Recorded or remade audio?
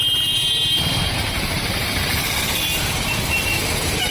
remade